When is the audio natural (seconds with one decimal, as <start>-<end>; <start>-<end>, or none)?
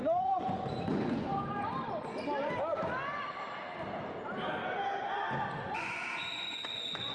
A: 1.4-5.6